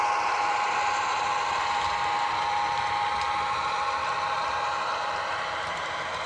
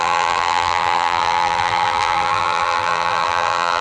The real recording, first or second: first